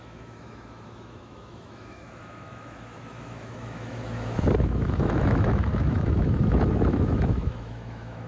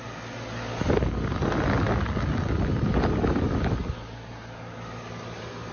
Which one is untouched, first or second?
second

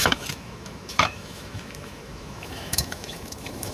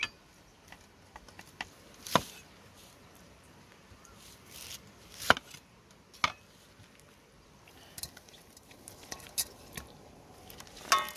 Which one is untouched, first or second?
second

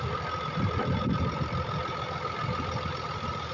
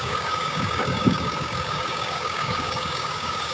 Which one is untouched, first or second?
first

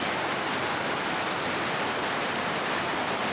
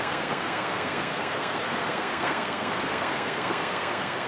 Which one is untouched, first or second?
first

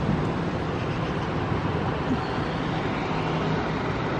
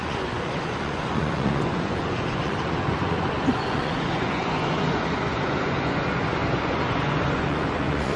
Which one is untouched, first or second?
first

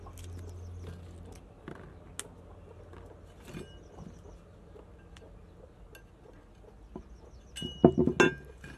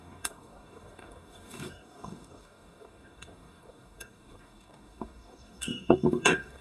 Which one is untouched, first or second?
first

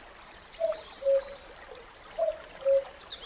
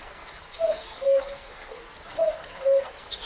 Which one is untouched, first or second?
first